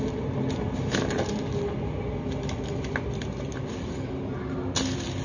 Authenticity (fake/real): real